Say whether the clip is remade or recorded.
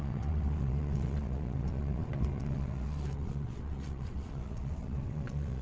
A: remade